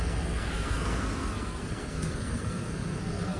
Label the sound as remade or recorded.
remade